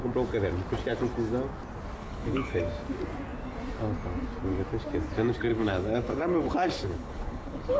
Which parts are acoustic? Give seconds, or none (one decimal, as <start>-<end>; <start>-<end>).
0.0-2.0; 2.6-5.5